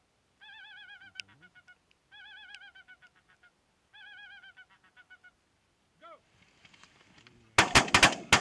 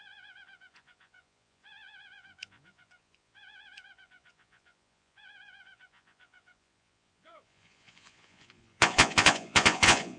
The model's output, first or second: second